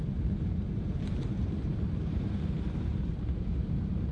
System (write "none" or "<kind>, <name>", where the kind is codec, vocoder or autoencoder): vocoder, BigVGAN v2